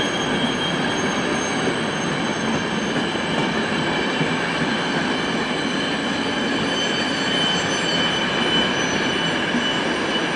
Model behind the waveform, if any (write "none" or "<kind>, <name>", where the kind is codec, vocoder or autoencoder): none